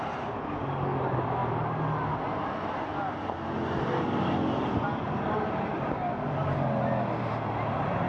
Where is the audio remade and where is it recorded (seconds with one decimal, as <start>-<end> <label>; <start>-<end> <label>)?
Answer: 0.0-8.1 recorded

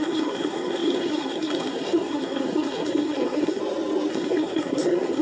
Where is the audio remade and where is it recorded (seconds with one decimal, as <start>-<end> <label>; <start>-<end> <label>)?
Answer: 0.0-3.6 remade; 3.6-4.1 recorded; 4.1-5.2 remade

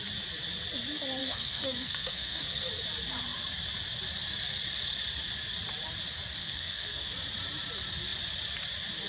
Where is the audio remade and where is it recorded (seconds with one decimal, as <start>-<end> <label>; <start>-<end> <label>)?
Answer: 0.0-1.2 recorded; 1.2-2.7 remade; 2.7-6.4 recorded; 6.4-7.1 remade; 7.1-9.1 recorded

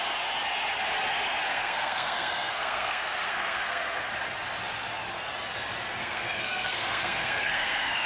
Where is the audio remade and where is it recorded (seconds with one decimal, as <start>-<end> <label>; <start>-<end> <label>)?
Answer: 0.0-1.5 recorded; 1.5-4.1 remade; 4.1-6.0 recorded; 6.0-8.1 remade

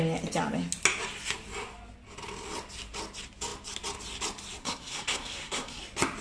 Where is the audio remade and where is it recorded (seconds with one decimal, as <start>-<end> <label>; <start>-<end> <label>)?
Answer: 0.0-4.6 recorded; 4.6-5.8 remade; 5.8-6.2 recorded

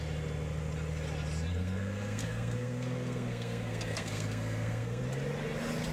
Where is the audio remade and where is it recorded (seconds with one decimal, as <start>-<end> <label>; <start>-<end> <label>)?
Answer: 0.0-1.5 recorded; 1.5-5.0 remade; 5.0-5.9 recorded

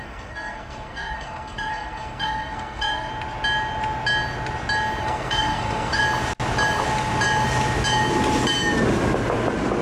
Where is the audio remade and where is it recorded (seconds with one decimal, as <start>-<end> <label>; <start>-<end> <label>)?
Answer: 0.0-3.1 remade; 3.1-5.0 recorded; 5.0-6.0 remade; 6.0-9.8 recorded